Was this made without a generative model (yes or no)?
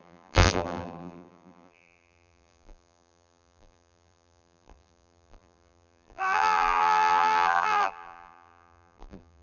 no